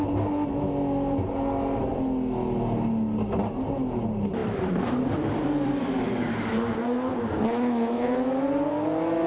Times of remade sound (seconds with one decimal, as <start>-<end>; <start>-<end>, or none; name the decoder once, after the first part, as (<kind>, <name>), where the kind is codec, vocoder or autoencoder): 4.4-6.1 (vocoder, BigVGAN v2)